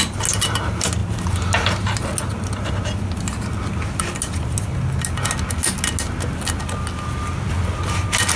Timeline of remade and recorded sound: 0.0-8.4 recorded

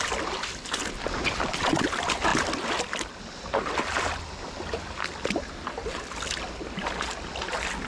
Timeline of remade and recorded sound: 0.0-7.9 recorded

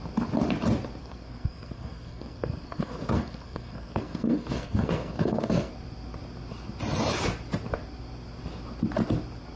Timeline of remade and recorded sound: 0.0-1.0 recorded; 1.0-5.7 remade; 5.7-9.6 recorded

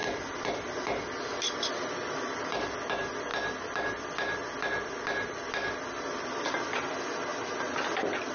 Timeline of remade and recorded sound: 0.0-8.3 recorded

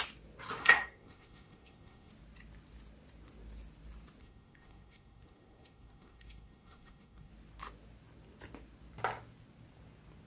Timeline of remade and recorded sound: 0.0-0.6 recorded; 0.6-2.1 remade; 2.1-4.2 recorded; 4.2-7.3 remade; 7.3-10.3 recorded

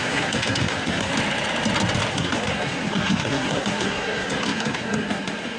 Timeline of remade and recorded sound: 0.0-1.1 remade; 1.1-2.1 recorded; 2.1-5.6 remade